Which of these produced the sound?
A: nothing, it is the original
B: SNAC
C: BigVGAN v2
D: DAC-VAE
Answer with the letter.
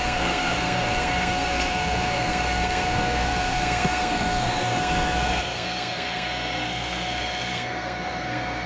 B